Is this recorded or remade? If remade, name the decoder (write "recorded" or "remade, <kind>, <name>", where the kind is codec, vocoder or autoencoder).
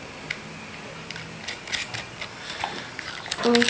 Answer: recorded